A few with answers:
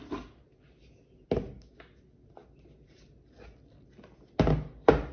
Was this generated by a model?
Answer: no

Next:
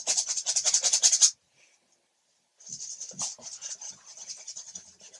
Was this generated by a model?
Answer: no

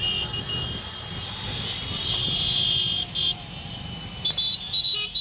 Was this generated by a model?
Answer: no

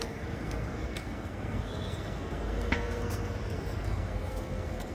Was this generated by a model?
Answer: yes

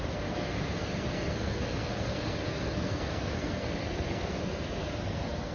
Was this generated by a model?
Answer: yes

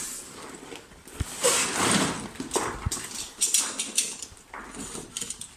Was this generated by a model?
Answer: no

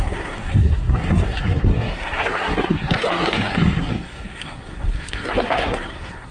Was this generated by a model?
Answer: yes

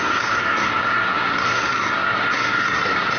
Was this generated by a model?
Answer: yes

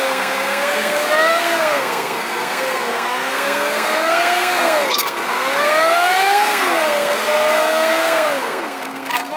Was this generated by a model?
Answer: yes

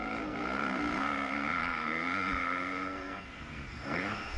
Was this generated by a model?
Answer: yes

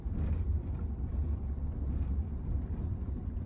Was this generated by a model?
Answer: no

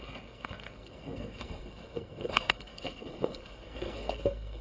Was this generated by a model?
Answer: yes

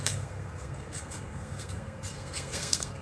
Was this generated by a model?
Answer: yes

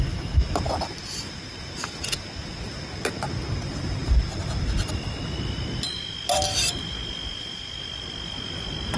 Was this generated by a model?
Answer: no